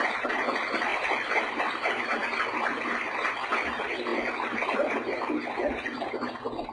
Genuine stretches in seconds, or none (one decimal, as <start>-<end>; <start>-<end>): 0.9-1.6